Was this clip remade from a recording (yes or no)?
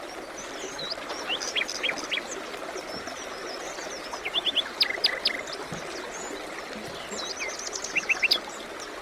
no